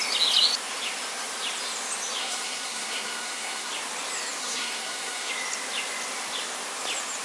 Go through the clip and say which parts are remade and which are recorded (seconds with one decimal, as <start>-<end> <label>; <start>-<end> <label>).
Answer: 0.0-2.2 recorded; 2.2-3.7 remade; 3.7-4.4 recorded; 4.4-5.3 remade; 5.3-7.2 recorded